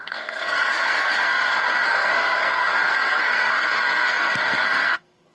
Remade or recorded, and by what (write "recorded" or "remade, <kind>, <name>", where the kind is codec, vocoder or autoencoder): remade, codec, SNAC